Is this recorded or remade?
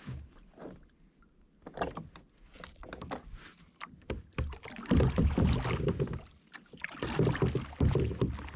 recorded